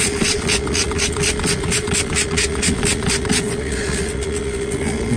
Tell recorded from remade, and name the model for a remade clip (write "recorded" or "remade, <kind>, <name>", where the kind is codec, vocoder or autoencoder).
remade, vocoder, Vocos